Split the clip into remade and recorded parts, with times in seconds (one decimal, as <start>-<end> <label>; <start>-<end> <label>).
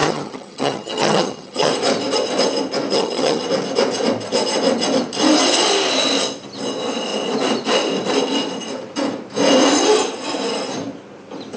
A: 0.0-1.7 remade; 1.7-2.9 recorded; 2.9-3.4 remade; 3.4-11.6 recorded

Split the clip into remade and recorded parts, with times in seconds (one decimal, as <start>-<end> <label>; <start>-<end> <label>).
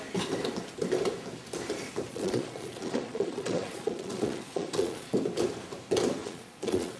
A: 0.0-2.1 recorded; 2.1-5.1 remade; 5.1-6.2 recorded; 6.2-7.0 remade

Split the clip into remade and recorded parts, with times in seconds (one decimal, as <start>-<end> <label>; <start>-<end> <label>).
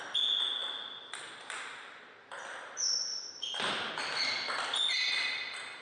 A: 0.0-5.8 recorded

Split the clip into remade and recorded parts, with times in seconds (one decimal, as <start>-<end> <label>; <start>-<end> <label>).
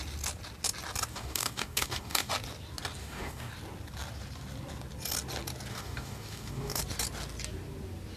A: 0.0-1.1 recorded; 1.1-2.3 remade; 2.3-3.0 recorded; 3.0-3.5 remade; 3.5-5.7 recorded; 5.7-6.8 remade; 6.8-8.2 recorded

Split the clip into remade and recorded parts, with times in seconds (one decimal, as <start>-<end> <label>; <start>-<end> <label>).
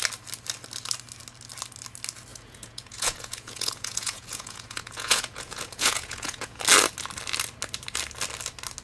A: 0.0-2.3 recorded; 2.3-6.6 remade; 6.6-8.8 recorded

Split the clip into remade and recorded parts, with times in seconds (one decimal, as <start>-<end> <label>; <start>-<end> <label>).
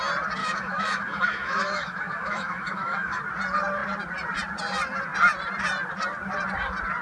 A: 0.0-0.4 recorded; 0.4-3.2 remade; 3.2-7.0 recorded